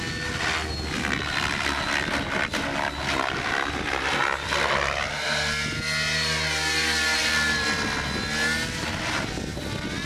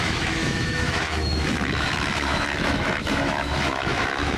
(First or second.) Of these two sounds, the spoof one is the second